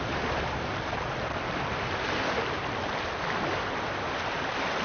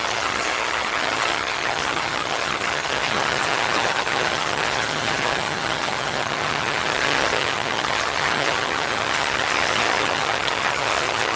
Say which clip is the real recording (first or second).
first